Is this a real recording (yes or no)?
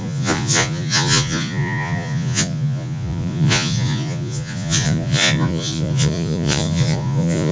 no